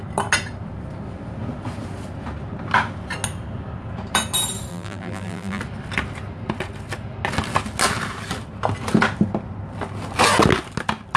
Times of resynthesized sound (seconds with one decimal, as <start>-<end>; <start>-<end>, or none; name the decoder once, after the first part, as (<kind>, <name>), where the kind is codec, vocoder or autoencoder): 4.7-5.6 (vocoder, BigVGAN v2)